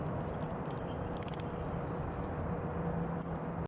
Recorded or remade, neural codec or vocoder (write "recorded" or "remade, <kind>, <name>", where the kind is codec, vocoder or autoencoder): recorded